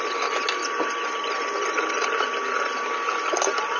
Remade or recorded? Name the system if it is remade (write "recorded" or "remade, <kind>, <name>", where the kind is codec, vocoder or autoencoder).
recorded